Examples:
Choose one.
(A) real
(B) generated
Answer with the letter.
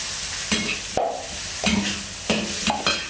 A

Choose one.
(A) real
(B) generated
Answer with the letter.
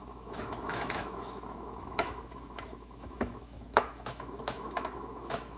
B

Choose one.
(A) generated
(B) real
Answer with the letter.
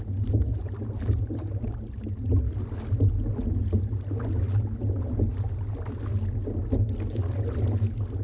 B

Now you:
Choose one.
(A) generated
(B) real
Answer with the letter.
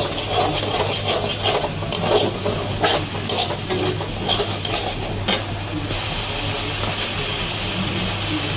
B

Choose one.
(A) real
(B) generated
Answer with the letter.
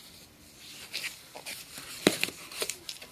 A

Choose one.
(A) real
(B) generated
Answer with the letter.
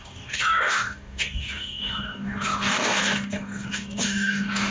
B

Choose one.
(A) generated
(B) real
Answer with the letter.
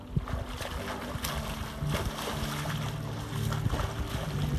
B